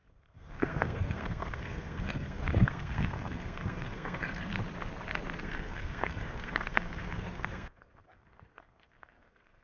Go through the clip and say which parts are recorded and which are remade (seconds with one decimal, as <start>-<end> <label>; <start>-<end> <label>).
0.0-4.5 remade; 4.5-5.4 recorded; 5.4-9.6 remade